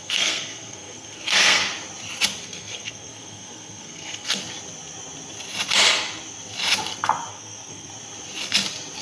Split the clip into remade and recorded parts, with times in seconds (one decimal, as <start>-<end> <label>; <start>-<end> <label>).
0.0-1.6 remade; 1.6-2.4 recorded; 2.4-4.4 remade; 4.4-7.3 recorded; 7.3-7.9 remade; 7.9-9.0 recorded